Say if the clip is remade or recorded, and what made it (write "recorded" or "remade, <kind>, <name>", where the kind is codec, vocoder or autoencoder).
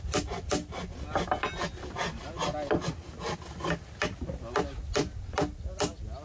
recorded